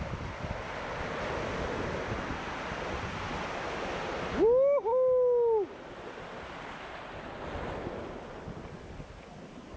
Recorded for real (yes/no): yes